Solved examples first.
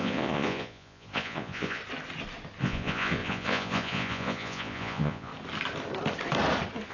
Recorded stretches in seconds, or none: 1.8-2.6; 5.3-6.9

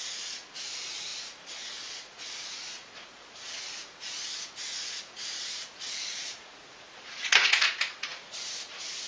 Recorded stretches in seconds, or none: none

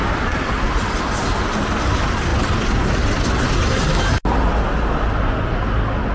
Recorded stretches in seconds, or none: 0.0-6.1